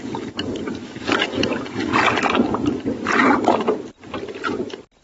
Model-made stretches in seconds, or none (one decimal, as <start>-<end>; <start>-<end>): 0.0-1.9